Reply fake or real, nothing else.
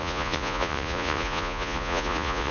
fake